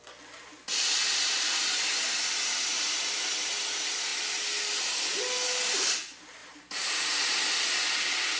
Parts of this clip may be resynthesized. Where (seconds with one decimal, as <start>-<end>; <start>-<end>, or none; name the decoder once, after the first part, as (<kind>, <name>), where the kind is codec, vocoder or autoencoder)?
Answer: 4.1-4.7 (vocoder, BigVGAN v2); 6.4-7.8